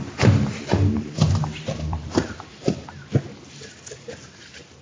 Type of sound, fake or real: fake